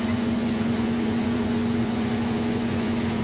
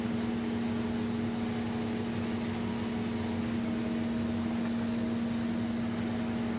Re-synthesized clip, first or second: first